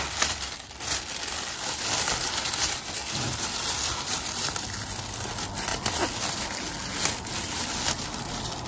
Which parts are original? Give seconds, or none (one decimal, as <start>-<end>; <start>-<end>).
0.0-8.7